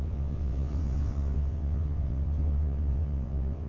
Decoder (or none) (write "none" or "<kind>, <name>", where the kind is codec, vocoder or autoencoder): vocoder, WaveNeXt